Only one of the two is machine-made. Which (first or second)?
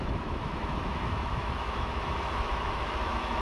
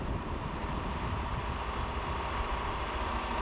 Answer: first